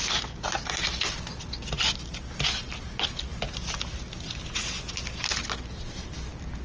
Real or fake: real